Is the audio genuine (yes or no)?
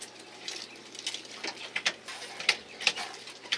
yes